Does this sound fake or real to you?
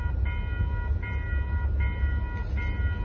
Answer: real